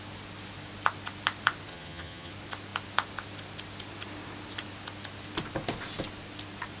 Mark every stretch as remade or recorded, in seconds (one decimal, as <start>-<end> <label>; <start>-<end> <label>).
0.0-1.7 recorded; 1.7-2.3 remade; 2.3-6.8 recorded